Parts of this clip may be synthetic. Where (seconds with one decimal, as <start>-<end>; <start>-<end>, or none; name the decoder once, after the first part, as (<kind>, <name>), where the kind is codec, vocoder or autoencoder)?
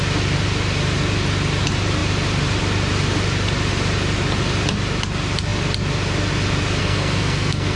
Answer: 6.8-7.8 (codec, SNAC)